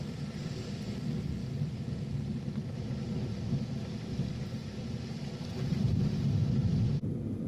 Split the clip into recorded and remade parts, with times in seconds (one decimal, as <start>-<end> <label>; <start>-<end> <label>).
0.0-7.5 recorded